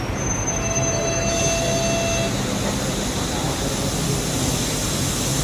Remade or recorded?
recorded